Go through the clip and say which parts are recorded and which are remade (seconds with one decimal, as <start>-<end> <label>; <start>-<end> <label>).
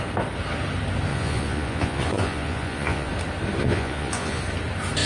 0.0-1.1 recorded; 1.1-3.1 remade; 3.1-3.6 recorded; 3.6-4.4 remade; 4.4-5.1 recorded